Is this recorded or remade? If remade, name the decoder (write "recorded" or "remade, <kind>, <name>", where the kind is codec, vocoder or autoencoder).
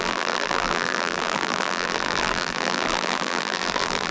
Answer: remade, vocoder, BigVGAN v2